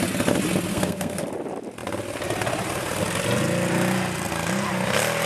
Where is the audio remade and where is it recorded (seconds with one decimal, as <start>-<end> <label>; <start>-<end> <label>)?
0.0-0.7 recorded; 0.7-1.3 remade; 1.3-5.3 recorded